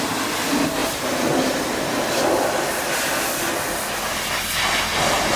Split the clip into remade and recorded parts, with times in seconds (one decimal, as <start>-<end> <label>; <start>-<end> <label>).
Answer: 0.0-5.4 recorded